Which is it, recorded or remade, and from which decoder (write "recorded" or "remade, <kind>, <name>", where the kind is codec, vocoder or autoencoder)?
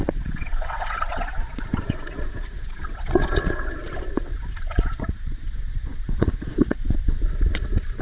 remade, vocoder, Vocos